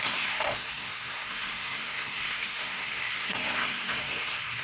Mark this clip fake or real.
fake